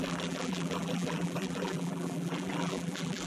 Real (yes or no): no